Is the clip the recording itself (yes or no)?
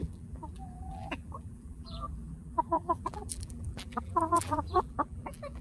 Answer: no